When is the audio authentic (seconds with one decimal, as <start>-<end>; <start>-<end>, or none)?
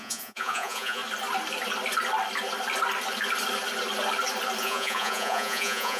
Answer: 1.0-4.6